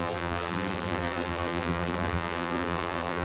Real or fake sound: fake